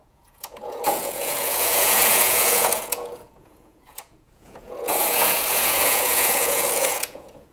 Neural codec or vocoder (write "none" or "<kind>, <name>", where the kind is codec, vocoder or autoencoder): vocoder, Vocos